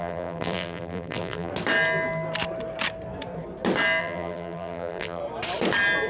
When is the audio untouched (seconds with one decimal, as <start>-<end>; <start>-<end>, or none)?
1.5-4.0; 5.2-6.1